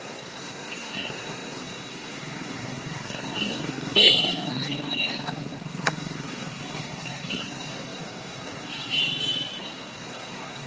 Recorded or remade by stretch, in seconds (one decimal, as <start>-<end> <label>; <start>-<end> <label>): 0.0-9.0 remade; 9.0-9.6 recorded; 9.6-10.7 remade